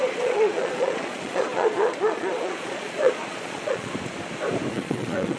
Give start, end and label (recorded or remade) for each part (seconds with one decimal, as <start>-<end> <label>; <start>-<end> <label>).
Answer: 0.0-3.9 remade; 3.9-4.7 recorded; 4.7-5.4 remade